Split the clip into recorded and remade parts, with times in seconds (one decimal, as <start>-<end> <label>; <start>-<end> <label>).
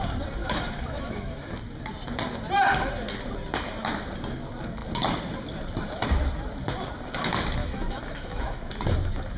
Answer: 0.0-0.4 recorded; 0.4-1.5 remade; 1.5-7.6 recorded; 7.6-8.7 remade; 8.7-9.4 recorded